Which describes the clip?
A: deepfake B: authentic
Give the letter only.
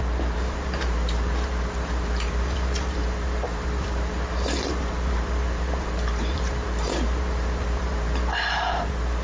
A